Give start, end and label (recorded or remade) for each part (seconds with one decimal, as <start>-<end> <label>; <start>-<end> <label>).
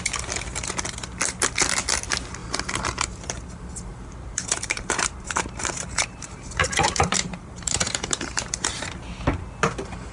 0.0-2.4 recorded; 2.4-3.3 remade; 3.3-3.9 recorded; 3.9-8.4 remade; 8.4-10.1 recorded